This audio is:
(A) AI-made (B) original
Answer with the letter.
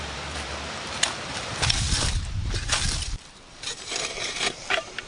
A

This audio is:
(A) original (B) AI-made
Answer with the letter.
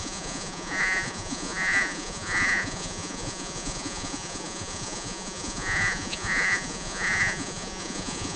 B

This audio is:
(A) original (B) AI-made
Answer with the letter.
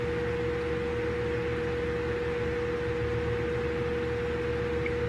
A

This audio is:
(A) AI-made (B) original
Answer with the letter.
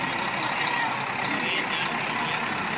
B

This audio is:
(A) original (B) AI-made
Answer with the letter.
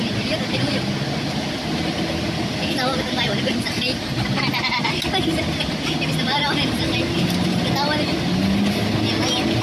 A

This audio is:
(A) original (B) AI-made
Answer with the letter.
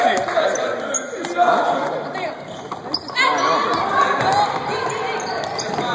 A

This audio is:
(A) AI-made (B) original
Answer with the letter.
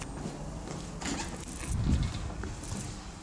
B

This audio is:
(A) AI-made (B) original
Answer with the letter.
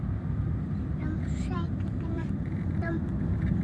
A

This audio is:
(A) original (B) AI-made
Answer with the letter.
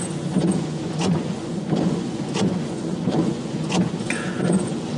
B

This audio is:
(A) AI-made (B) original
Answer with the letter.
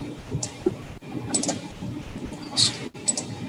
A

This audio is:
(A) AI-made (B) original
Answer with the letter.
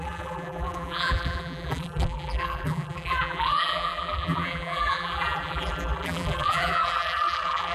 A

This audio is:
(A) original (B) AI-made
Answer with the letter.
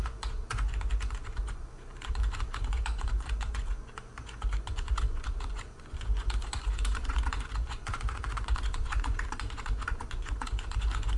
B